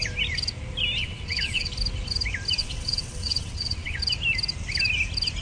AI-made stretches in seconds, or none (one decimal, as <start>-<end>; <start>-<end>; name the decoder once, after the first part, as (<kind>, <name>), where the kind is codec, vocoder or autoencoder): 1.0-1.7 (vocoder, WaveNeXt); 2.6-4.0